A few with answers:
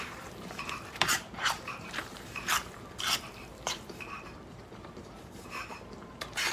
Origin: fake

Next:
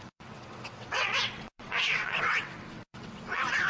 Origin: fake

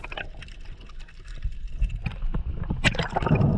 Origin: real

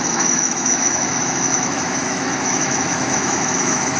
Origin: fake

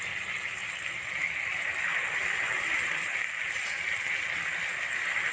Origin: real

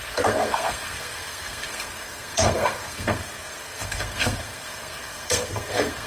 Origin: fake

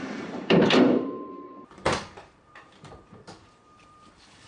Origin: fake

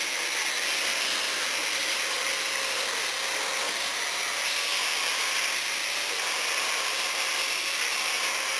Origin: real